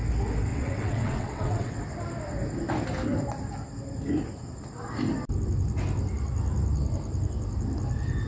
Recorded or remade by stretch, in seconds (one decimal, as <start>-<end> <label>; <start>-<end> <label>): 0.0-0.5 recorded; 0.5-1.8 remade; 1.8-8.3 recorded